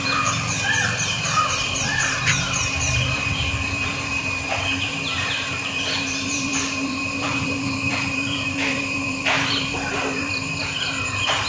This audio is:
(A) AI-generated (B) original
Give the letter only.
A